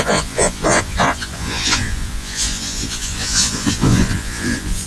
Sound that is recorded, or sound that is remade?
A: remade